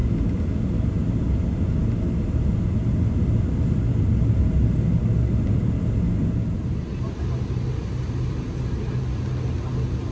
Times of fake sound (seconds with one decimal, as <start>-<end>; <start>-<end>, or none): none